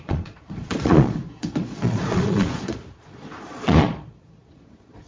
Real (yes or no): no